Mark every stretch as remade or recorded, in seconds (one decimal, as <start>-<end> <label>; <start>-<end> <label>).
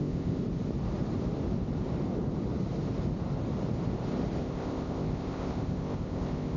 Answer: 0.0-0.4 remade; 0.4-4.4 recorded; 4.4-6.6 remade